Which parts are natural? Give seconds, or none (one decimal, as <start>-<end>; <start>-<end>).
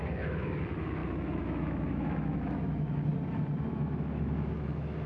3.1-3.7